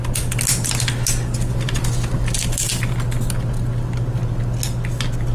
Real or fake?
real